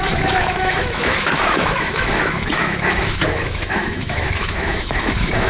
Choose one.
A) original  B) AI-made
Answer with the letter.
B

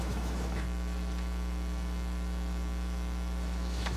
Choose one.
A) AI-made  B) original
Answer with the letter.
A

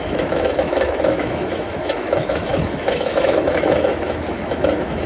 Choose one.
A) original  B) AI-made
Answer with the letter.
B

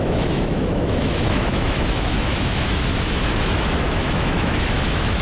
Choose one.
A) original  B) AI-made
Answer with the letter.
B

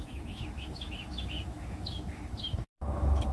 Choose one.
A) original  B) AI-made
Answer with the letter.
B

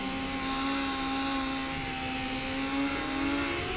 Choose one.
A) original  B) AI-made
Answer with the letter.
A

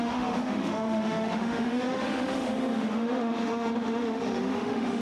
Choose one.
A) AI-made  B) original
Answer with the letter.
A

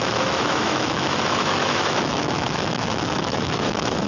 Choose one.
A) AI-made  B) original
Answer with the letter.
A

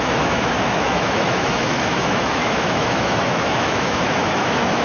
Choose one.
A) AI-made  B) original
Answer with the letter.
A